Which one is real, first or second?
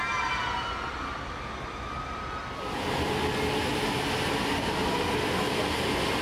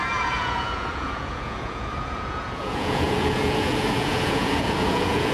first